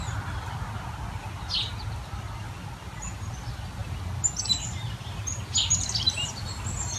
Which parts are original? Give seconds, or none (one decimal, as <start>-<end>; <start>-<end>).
0.0-7.0